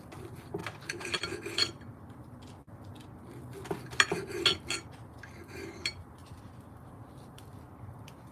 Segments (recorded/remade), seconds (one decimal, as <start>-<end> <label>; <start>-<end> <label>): 0.0-0.6 recorded; 0.6-2.4 remade; 2.4-6.2 recorded; 6.2-8.3 remade